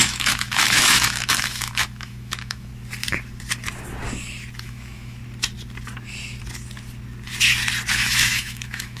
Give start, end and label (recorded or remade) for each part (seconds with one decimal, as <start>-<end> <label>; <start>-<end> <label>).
0.0-2.7 remade; 2.7-4.6 recorded; 4.6-5.2 remade; 5.2-7.9 recorded; 7.9-9.0 remade